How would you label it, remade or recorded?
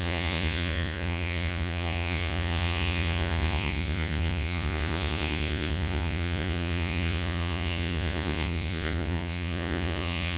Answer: remade